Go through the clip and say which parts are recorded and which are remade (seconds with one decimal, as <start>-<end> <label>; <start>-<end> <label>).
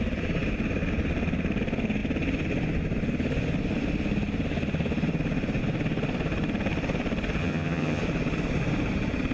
0.0-7.4 recorded; 7.4-8.0 remade; 8.0-9.3 recorded